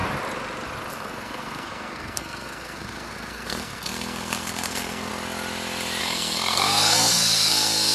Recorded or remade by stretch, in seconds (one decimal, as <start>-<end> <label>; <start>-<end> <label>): 0.0-0.9 recorded; 0.9-5.1 remade; 5.1-6.0 recorded; 6.0-7.9 remade